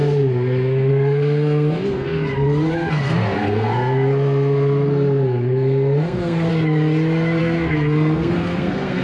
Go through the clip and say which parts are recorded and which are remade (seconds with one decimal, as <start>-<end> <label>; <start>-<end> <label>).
0.0-2.2 remade; 2.2-2.9 recorded; 2.9-6.5 remade; 6.5-7.4 recorded; 7.4-9.0 remade